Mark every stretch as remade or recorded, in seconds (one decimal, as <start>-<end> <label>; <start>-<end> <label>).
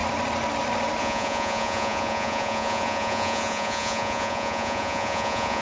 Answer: 0.0-1.0 recorded; 1.0-5.6 remade